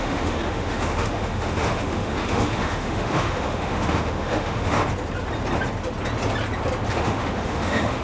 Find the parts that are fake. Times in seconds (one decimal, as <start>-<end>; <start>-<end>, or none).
0.0-4.8; 6.9-8.0